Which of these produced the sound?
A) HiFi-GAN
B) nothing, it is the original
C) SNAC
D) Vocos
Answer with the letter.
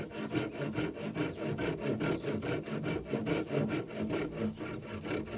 B